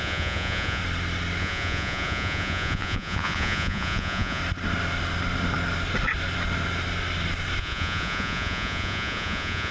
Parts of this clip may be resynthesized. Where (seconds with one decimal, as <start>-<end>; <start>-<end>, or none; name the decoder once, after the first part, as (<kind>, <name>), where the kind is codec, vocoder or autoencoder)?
0.0-0.8 (vocoder, Vocos); 1.4-4.4; 7.6-9.7